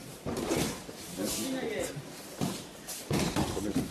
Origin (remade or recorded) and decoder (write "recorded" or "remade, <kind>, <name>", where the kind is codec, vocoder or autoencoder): recorded